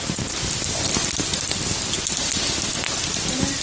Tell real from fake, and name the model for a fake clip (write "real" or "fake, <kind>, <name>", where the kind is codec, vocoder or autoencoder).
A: real